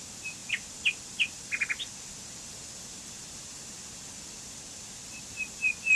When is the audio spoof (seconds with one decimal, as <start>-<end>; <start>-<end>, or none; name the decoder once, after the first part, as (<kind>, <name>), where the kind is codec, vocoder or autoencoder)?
none

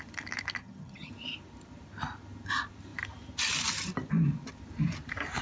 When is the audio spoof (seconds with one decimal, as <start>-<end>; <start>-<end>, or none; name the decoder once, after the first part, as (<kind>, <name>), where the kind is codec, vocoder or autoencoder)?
0.6-1.1 (vocoder, HiFi-GAN)

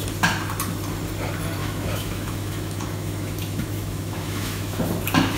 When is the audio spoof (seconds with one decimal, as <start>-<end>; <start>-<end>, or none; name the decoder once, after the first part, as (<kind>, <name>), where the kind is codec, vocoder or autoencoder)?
1.6-4.8 (autoencoder, DAC-VAE)

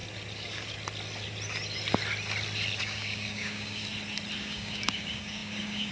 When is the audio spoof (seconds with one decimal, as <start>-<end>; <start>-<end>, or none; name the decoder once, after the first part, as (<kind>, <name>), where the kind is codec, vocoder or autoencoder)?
2.8-3.8 (codec, DAC); 4.4-5.9

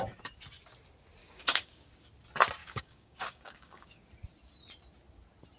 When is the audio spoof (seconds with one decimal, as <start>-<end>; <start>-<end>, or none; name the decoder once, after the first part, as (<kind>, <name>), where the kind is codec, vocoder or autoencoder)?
1.2-1.9 (codec, DAC); 2.6-4.1

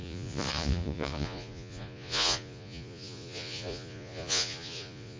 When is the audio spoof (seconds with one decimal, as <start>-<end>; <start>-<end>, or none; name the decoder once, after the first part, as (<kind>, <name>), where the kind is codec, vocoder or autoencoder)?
0.0-5.2 (vocoder, Vocos)